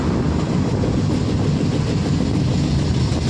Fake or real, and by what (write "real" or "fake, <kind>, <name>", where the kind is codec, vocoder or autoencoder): real